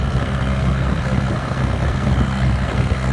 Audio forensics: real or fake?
fake